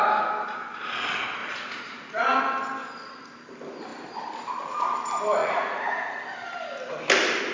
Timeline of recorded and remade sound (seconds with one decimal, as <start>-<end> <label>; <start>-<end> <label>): 0.0-1.4 recorded; 1.4-2.4 remade; 2.4-5.4 recorded; 5.4-6.2 remade; 6.2-7.5 recorded